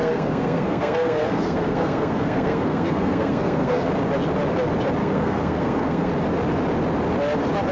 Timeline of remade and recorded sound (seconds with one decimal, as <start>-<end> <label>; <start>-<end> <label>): 0.0-3.9 remade; 3.9-5.0 recorded; 5.0-6.1 remade; 6.1-7.7 recorded